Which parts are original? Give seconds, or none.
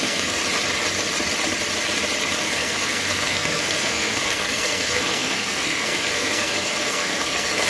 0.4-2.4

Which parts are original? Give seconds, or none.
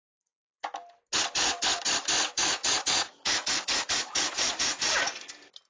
0.0-2.4; 5.3-5.7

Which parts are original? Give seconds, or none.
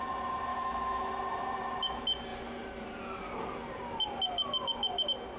0.0-0.5; 1.1-5.4